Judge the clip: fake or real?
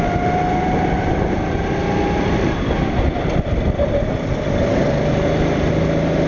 real